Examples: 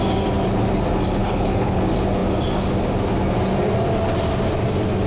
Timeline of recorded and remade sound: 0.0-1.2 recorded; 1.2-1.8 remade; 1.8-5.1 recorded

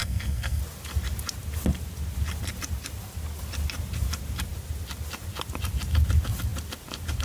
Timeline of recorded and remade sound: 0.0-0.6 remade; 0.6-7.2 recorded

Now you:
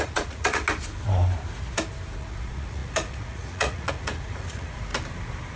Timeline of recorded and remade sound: 0.0-0.6 remade; 0.6-2.2 recorded; 2.2-4.9 remade; 4.9-5.6 recorded